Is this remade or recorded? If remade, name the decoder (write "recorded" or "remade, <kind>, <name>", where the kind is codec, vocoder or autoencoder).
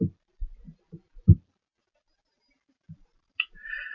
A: recorded